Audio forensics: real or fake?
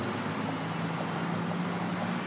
real